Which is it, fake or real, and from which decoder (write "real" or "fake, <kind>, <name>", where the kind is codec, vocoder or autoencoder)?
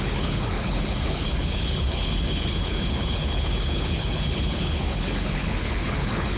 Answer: fake, codec, HILCodec